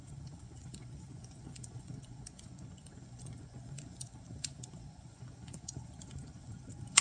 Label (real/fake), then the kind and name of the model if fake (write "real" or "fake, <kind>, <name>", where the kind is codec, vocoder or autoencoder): fake, vocoder, Vocos